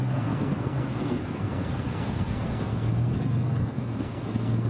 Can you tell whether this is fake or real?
fake